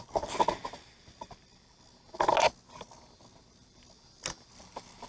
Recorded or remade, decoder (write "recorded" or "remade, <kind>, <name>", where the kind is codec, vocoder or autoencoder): recorded